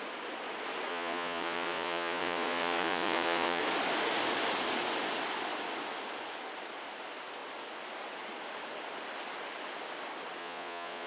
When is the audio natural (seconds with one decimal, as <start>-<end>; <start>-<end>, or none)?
0.0-0.9; 3.6-10.4